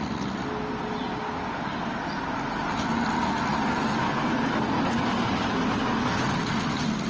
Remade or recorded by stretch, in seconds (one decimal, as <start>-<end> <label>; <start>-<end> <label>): 0.0-7.1 recorded